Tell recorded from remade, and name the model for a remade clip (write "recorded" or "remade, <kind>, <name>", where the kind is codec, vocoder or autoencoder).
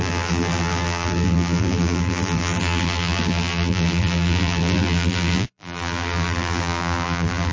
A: remade, vocoder, BigVGAN v2